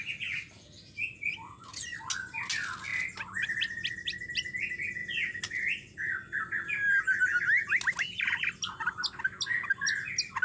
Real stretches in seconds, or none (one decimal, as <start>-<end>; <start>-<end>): 0.0-10.4